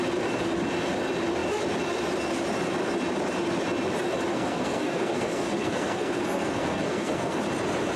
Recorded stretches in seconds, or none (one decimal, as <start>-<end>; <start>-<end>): 0.0-4.3; 7.4-8.0